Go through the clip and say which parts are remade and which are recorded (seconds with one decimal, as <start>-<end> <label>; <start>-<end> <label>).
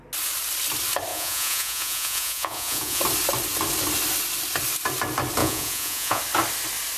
0.0-1.1 recorded; 1.1-3.0 remade; 3.0-5.4 recorded; 5.4-6.2 remade; 6.2-7.0 recorded